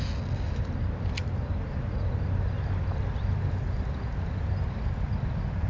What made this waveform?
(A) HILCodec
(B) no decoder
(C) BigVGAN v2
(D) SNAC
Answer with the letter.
B